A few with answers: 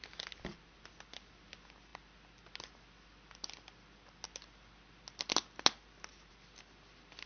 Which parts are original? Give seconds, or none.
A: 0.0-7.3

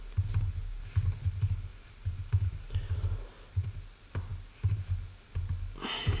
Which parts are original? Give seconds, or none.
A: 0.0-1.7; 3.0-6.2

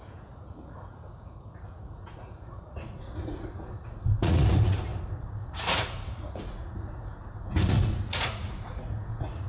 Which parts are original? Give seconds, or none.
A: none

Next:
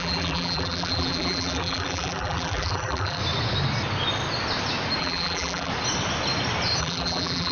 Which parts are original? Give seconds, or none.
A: 3.2-5.0; 5.7-6.8